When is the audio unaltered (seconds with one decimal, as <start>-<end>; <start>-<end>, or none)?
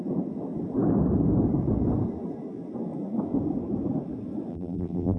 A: 0.0-4.5